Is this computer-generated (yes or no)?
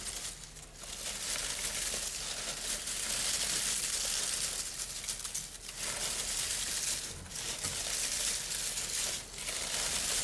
no